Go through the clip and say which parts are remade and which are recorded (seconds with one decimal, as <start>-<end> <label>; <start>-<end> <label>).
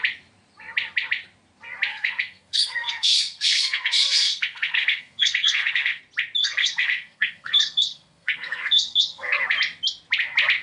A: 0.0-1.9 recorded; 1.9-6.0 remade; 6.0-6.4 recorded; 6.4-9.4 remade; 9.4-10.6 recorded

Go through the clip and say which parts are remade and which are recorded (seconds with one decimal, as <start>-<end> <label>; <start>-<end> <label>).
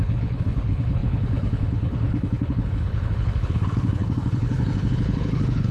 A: 0.0-5.7 remade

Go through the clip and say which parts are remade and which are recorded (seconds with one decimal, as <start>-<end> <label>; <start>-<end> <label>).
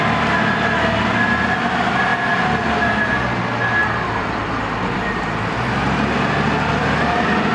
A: 0.0-7.5 recorded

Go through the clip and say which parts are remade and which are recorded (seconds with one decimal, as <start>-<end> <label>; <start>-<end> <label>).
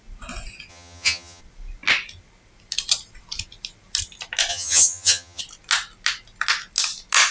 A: 0.0-0.7 recorded; 0.7-1.4 remade; 1.4-4.5 recorded; 4.5-5.4 remade; 5.4-7.3 recorded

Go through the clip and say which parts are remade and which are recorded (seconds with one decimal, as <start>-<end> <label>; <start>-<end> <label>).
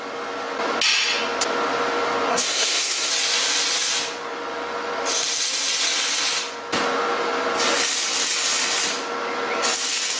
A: 0.0-2.3 recorded; 2.3-3.1 remade; 3.1-10.2 recorded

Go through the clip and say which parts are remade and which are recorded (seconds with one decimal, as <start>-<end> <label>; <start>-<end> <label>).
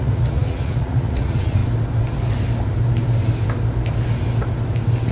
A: 0.0-1.6 remade; 1.6-5.1 recorded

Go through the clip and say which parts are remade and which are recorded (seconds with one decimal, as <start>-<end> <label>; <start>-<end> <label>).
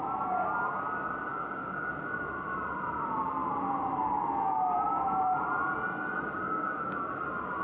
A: 0.0-1.3 recorded; 1.3-1.9 remade; 1.9-6.4 recorded; 6.4-7.1 remade; 7.1-7.6 recorded